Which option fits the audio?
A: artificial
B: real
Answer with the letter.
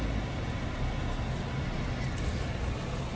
B